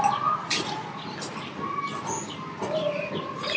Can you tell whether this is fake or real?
real